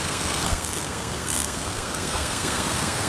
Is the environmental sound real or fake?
fake